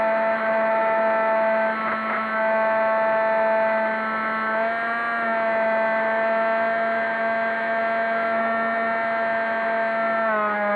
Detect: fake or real real